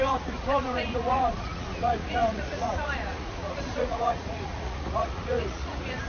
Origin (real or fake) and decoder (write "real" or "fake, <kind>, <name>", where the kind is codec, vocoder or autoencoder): fake, vocoder, Vocos